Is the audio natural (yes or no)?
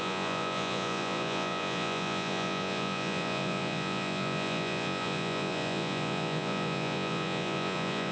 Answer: no